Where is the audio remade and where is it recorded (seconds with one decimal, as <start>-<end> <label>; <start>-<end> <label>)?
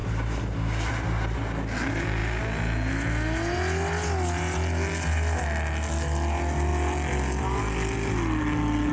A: 0.0-8.9 recorded